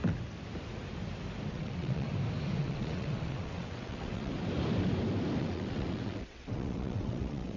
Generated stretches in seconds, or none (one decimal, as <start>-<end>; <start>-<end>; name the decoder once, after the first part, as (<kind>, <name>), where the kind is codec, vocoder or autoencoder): 1.5-2.1 (vocoder, WaveNeXt); 2.6-4.3; 5.4-7.6